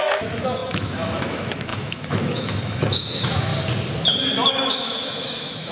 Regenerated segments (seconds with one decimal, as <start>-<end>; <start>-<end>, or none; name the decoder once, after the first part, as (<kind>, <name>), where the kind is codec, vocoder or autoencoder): 0.0-3.5 (autoencoder, DAC-VAE); 4.5-5.7